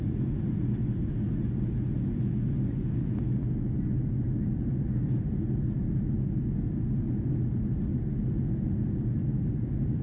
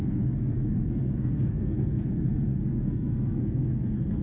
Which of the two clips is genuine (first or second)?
first